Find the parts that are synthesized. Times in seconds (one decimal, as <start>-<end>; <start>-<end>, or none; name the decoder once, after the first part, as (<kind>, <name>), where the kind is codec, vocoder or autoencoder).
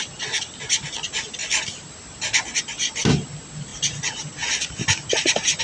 none